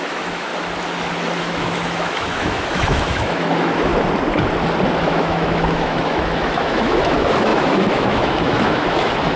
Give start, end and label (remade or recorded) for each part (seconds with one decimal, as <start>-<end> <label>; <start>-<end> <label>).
0.0-0.5 remade; 0.5-1.4 recorded; 1.4-3.9 remade; 3.9-5.0 recorded; 5.0-9.4 remade